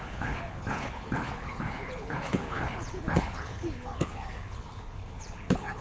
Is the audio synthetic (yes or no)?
yes